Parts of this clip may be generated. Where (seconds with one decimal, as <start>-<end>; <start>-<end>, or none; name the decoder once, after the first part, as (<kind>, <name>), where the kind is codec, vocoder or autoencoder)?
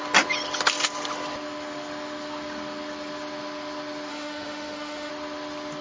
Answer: 4.1-5.1 (autoencoder, DAC-VAE)